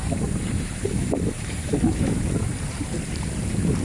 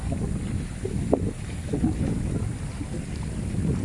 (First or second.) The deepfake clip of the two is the first